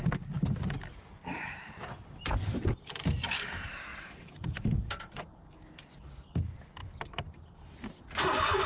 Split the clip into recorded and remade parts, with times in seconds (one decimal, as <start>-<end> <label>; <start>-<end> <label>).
0.0-1.9 recorded; 1.9-3.0 remade; 3.0-3.9 recorded; 3.9-5.4 remade; 5.4-6.8 recorded; 6.8-8.0 remade; 8.0-8.7 recorded